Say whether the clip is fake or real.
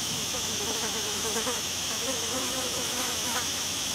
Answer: fake